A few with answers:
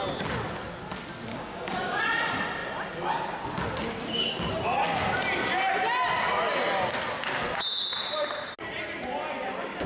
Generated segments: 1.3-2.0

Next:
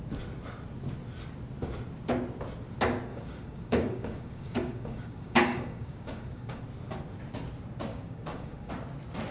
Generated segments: 3.1-6.6; 7.9-8.7

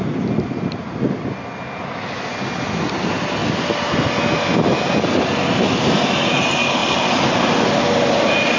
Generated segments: none

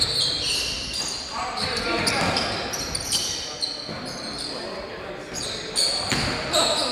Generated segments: 1.3-2.2

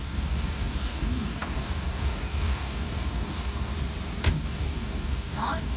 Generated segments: 0.0-3.7; 4.2-5.8

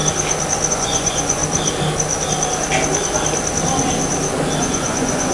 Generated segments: 0.7-1.4; 4.6-5.3